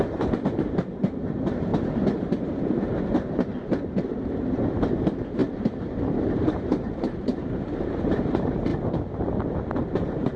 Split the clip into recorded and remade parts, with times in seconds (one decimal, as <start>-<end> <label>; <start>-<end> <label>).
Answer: 0.0-5.4 remade; 5.4-6.3 recorded; 6.3-8.7 remade; 8.7-9.8 recorded; 9.8-10.4 remade